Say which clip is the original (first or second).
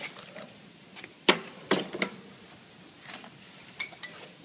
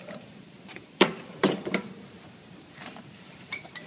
first